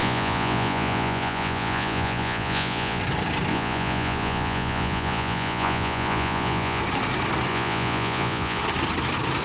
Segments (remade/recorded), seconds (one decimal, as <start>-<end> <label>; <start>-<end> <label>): 0.0-3.0 remade; 3.0-3.5 recorded; 3.5-6.8 remade; 6.8-7.5 recorded; 7.5-8.6 remade; 8.6-9.4 recorded